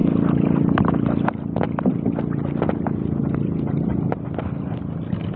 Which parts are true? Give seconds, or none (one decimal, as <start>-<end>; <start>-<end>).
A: 0.0-5.4